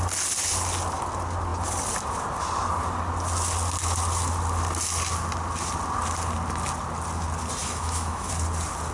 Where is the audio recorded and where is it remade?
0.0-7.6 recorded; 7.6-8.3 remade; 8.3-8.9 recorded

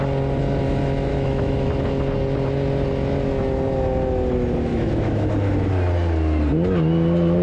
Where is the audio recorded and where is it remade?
0.0-1.1 recorded; 1.1-1.7 remade; 1.7-4.7 recorded; 4.7-5.3 remade; 5.3-7.4 recorded

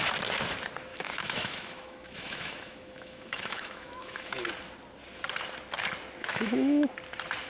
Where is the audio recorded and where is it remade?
0.0-0.9 recorded; 0.9-4.5 remade; 4.5-6.2 recorded; 6.2-6.9 remade; 6.9-7.5 recorded

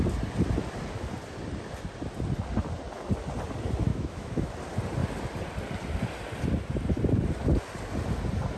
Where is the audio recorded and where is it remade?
0.0-3.9 recorded; 3.9-4.5 remade; 4.5-8.6 recorded

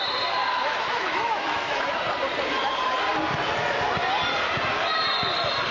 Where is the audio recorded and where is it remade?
0.0-0.4 recorded; 0.4-1.9 remade; 1.9-5.7 recorded

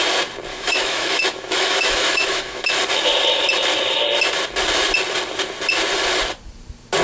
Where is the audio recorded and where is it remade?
0.0-0.5 recorded; 0.5-2.8 remade; 2.8-7.0 recorded

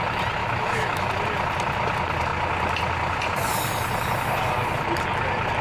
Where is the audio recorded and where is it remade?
0.0-0.4 recorded; 0.4-1.1 remade; 1.1-5.6 recorded

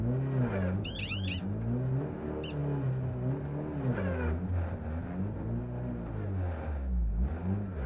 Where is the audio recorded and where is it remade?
0.0-7.9 recorded